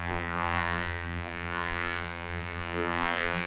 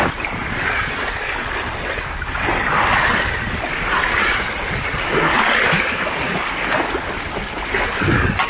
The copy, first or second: first